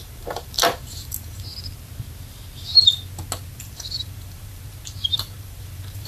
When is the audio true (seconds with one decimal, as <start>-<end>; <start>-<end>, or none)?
1.5-3.6